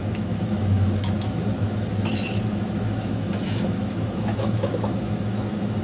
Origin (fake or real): fake